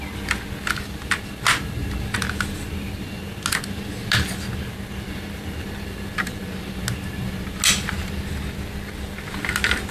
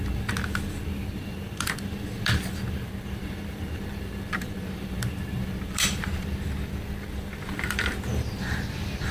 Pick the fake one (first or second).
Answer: second